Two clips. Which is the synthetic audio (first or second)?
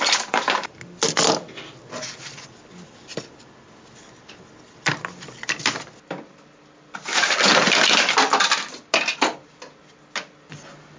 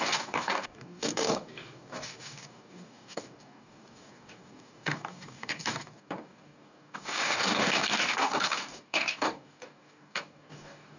second